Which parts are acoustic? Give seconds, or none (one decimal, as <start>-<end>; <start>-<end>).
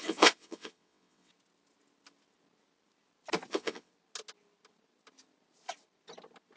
1.3-3.5; 3.9-6.6